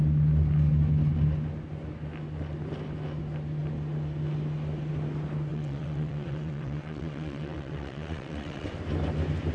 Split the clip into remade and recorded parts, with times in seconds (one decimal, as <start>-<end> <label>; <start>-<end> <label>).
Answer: 0.0-5.5 recorded; 5.5-8.7 remade; 8.7-9.5 recorded